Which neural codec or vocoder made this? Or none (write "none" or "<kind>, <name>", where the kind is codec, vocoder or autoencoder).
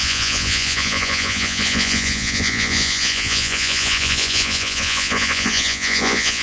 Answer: vocoder, Vocos